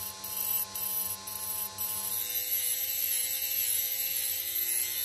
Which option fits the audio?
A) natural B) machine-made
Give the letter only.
A